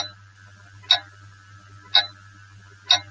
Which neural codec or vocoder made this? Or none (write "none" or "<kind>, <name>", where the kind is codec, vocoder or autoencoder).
none